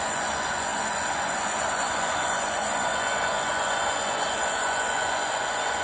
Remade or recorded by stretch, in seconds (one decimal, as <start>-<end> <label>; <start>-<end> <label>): 0.0-5.8 remade

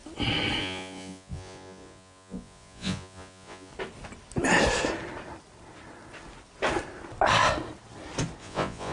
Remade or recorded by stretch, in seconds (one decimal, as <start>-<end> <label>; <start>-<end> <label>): 0.0-0.6 recorded; 0.6-3.7 remade; 3.7-8.4 recorded; 8.4-8.9 remade

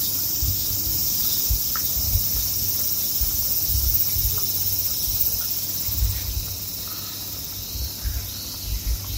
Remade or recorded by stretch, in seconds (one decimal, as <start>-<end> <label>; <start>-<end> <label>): 0.0-0.9 recorded; 0.9-1.5 remade; 1.5-9.2 recorded

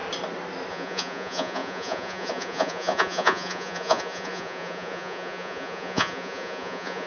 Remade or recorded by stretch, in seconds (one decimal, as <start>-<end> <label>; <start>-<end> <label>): 0.0-0.7 recorded; 0.7-7.1 remade